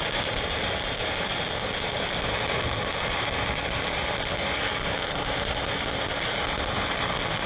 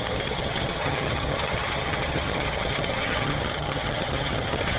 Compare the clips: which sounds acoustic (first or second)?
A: first